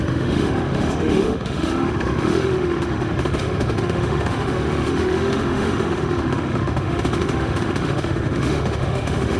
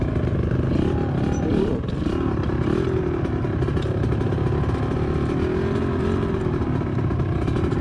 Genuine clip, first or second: second